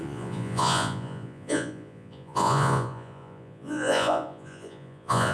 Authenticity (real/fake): fake